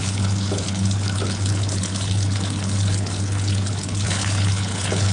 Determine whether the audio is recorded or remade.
remade